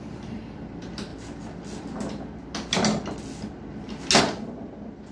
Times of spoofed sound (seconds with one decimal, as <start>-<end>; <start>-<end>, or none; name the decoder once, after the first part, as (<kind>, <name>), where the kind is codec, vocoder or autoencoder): 0.0-1.1 (vocoder, BigVGAN v2); 4.2-5.1